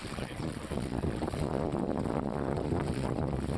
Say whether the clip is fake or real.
fake